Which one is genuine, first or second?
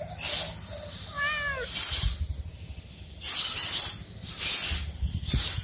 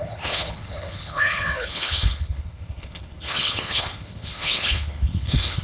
first